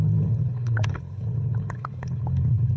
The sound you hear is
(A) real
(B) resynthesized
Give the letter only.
B